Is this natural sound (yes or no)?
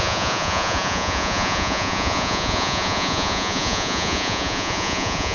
no